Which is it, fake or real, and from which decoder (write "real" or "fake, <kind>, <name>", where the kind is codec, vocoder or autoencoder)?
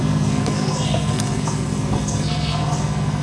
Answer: fake, codec, SNAC